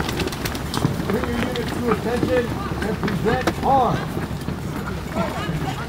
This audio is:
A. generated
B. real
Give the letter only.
B